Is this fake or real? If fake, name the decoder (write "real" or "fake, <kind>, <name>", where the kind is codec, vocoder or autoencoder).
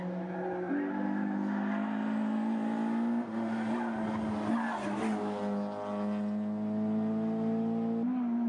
real